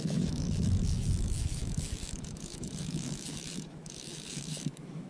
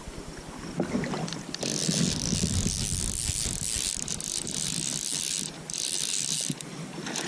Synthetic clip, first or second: first